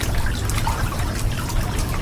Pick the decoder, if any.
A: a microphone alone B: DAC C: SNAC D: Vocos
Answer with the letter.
A